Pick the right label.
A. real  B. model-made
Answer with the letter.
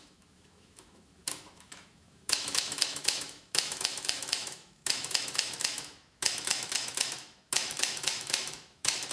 B